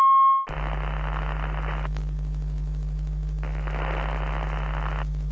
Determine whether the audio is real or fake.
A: real